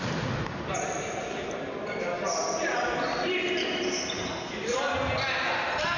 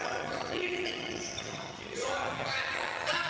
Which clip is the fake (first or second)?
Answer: second